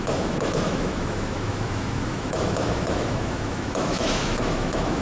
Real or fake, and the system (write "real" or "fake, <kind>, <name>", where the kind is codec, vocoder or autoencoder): fake, autoencoder, DAC-VAE